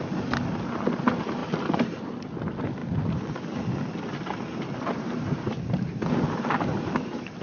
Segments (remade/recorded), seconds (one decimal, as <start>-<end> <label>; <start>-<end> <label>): 0.0-1.4 recorded; 1.4-2.0 remade; 2.0-7.4 recorded